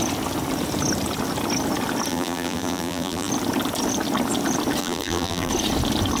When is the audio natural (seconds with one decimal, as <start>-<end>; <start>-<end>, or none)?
0.0-2.1; 3.3-4.8; 5.5-6.2